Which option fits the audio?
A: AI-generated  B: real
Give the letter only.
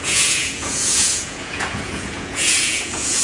A